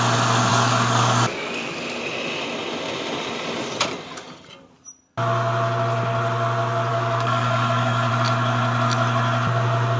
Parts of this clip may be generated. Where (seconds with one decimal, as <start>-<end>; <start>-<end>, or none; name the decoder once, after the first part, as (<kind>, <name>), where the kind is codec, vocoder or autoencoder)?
0.5-2.0 (codec, DAC); 6.9-8.1